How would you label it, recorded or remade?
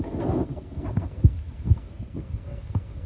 remade